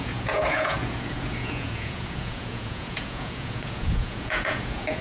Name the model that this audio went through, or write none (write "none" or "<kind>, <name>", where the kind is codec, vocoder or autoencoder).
vocoder, Vocos